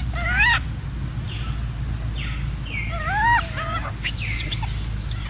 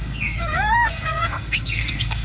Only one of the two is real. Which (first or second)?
first